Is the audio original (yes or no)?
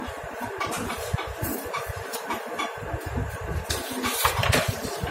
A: no